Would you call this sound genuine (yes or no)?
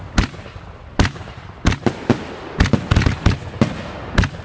yes